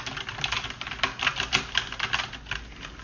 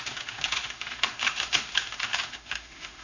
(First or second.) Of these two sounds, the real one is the first